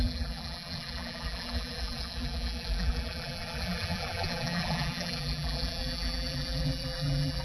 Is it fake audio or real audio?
fake